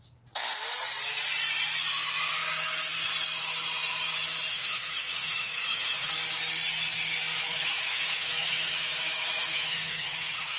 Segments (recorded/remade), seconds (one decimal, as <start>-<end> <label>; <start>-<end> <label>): 0.0-4.5 recorded; 4.5-6.1 remade; 6.1-7.4 recorded; 7.4-10.6 remade